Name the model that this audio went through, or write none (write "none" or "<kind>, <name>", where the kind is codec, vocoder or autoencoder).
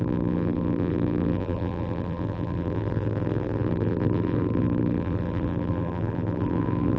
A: vocoder, BigVGAN v2